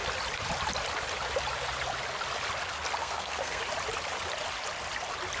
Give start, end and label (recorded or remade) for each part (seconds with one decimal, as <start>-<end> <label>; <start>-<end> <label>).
0.0-3.0 recorded; 3.0-3.6 remade; 3.6-5.4 recorded